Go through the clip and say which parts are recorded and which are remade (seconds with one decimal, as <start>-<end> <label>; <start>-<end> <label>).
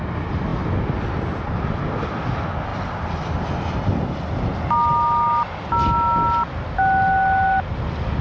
0.0-8.2 recorded